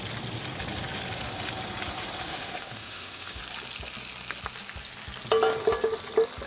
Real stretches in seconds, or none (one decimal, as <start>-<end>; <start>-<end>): 0.0-2.3; 3.4-6.5